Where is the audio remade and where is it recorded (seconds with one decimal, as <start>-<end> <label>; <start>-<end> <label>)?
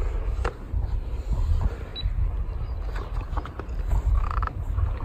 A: 0.0-5.0 recorded